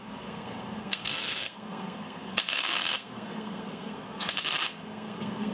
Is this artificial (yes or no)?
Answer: yes